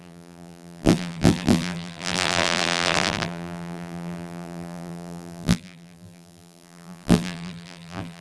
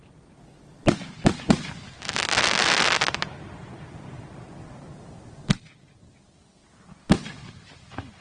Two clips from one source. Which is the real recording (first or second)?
second